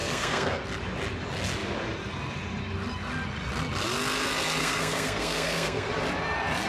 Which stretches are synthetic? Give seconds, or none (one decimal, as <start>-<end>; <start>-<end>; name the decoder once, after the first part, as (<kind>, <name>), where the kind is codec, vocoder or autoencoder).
0.0-0.6 (codec, SNAC); 4.6-5.9